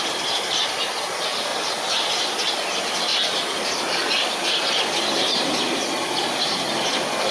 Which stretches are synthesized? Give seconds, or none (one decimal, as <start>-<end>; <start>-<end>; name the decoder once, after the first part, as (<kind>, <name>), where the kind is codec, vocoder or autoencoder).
1.5-2.1 (vocoder, BigVGAN v2); 3.1-4.1